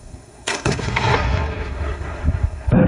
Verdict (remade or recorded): remade